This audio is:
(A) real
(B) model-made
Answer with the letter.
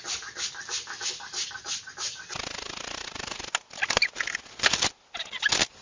A